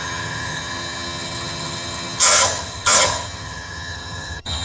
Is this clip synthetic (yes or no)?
yes